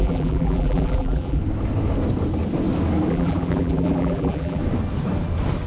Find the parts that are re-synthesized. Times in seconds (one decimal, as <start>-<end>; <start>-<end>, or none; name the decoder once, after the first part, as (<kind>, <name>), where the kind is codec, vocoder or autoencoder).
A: 0.0-1.4 (vocoder, BigVGAN v2); 3.1-4.6